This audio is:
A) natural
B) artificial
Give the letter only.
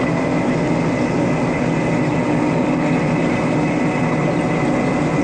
A